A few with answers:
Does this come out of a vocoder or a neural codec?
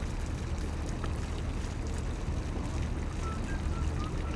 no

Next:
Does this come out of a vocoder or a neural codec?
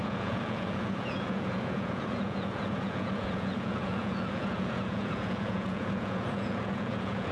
yes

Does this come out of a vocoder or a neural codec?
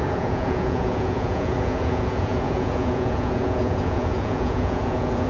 yes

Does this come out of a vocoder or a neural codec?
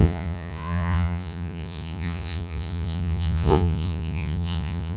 yes